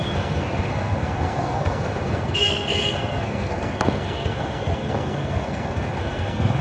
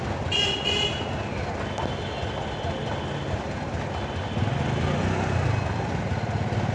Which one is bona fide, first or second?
second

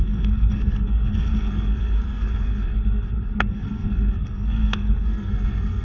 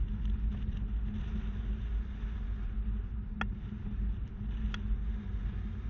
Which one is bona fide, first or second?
second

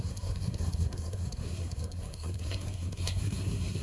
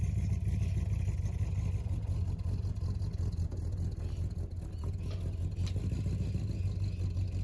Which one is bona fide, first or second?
second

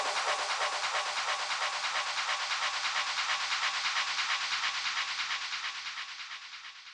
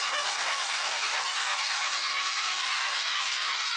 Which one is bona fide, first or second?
first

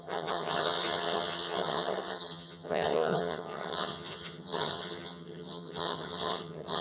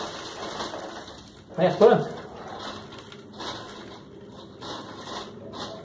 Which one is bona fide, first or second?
second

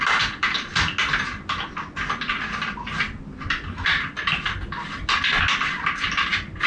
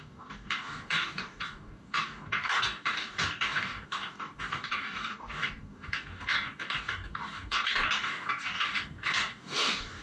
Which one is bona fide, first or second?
first